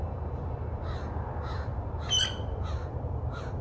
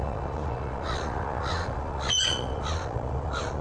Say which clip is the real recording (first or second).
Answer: first